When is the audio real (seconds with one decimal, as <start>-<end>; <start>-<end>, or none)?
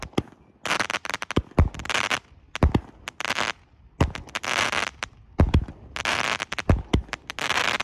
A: 0.0-4.9; 6.4-7.0